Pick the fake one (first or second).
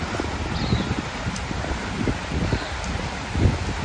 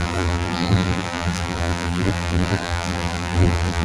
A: second